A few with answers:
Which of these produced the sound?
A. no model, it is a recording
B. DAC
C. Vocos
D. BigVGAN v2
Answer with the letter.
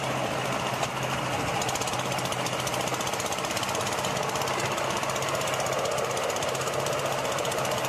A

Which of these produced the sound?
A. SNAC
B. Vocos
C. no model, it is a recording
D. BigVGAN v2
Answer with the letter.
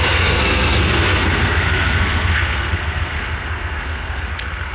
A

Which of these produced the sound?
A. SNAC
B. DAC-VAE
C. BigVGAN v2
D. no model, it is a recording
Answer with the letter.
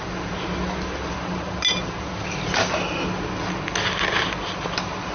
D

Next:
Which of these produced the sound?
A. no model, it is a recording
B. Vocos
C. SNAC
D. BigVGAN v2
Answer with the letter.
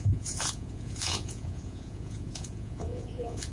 B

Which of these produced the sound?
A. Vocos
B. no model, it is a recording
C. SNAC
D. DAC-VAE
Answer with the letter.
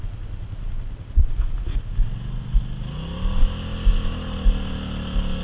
B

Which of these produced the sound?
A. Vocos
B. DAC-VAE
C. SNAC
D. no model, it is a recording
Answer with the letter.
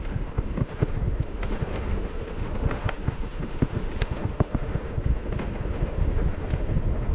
B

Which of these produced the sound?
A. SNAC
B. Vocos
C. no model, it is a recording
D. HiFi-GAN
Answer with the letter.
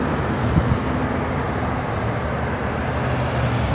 C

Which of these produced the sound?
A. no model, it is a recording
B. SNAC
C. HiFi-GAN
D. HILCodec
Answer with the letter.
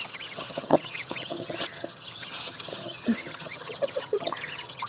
C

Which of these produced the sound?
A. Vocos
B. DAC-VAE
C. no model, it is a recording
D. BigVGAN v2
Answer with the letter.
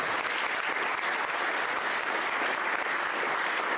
C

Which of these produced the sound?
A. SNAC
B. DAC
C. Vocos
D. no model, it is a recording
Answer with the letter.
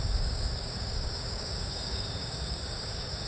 B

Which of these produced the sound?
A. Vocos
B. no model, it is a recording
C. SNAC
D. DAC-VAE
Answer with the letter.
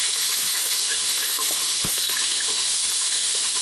D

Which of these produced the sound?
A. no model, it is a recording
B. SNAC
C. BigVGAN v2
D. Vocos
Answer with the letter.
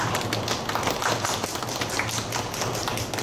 A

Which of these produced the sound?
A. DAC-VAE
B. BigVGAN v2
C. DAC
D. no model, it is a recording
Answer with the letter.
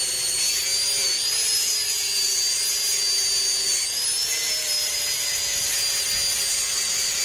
D